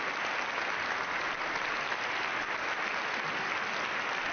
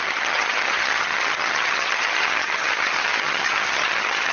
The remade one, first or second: second